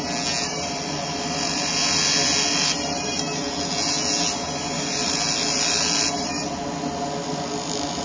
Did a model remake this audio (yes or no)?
no